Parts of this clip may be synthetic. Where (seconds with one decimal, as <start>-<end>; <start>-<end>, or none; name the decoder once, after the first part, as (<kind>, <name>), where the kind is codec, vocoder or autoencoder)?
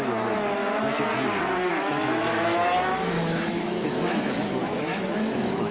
0.0-0.6 (autoencoder, DAC-VAE); 1.7-5.7